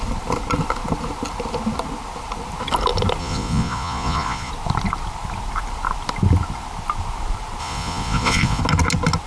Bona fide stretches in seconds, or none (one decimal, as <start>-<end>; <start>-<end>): 0.0-3.2; 4.5-7.6; 8.6-9.3